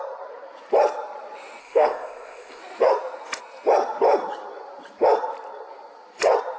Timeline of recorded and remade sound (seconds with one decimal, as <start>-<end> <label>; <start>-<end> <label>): 0.0-1.6 recorded; 1.6-2.6 remade; 2.6-6.6 recorded